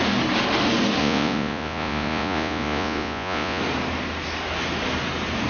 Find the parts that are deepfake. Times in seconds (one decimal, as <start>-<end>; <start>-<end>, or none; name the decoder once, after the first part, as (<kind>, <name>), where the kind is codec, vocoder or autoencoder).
1.0-3.6 (vocoder, Vocos)